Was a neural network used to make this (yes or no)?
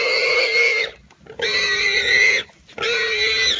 no